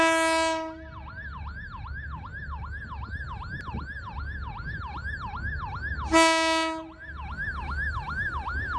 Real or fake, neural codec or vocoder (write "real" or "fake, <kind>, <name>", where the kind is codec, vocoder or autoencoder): real